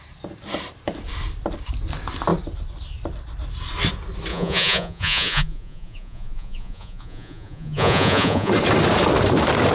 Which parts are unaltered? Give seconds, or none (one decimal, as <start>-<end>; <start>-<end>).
0.0-4.3; 8.5-9.7